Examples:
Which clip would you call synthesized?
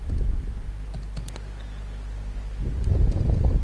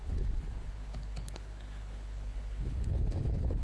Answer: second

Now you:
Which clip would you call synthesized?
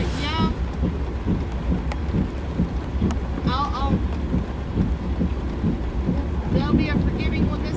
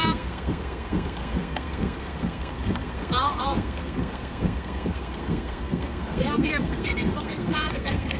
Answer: second